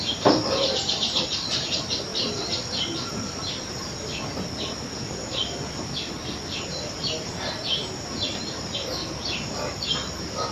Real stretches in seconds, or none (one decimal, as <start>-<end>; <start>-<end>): 0.0-10.5